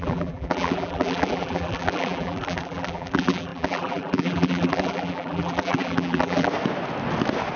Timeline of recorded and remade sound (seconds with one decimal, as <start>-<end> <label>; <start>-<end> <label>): 0.0-6.5 remade; 6.5-7.6 recorded